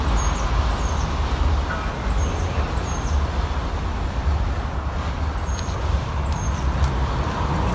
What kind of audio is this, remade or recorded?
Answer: recorded